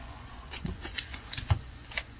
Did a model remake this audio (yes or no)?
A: yes